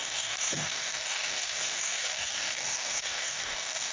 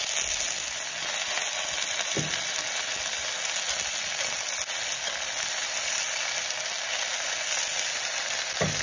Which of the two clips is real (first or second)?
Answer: second